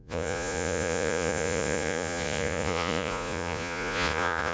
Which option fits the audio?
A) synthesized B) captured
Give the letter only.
A